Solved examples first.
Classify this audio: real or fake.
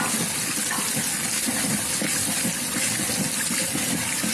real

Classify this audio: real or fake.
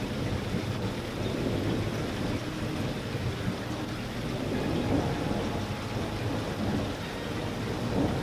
real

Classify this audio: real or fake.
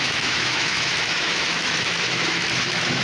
fake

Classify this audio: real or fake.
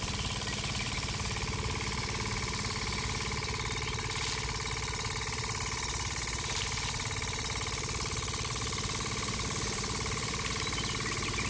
real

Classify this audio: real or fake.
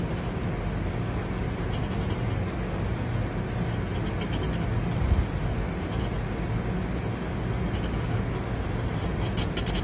real